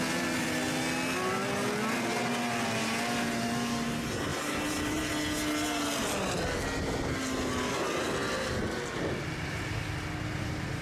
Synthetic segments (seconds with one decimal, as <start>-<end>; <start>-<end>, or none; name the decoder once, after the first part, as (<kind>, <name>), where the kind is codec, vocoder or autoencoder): 4.3-5.1 (vocoder, BigVGAN v2)